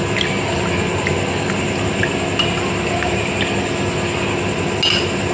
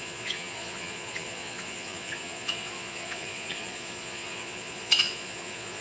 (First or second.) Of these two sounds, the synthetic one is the second